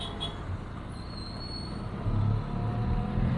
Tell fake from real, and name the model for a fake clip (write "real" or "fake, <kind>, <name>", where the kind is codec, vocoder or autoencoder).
real